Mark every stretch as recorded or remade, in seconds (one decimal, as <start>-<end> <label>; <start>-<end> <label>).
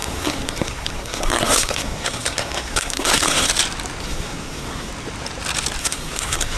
0.0-3.5 remade; 3.5-4.0 recorded; 4.0-4.9 remade; 4.9-5.8 recorded; 5.8-6.6 remade